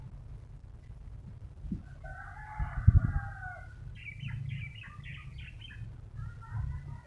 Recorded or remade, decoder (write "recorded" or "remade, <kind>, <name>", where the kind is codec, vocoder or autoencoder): recorded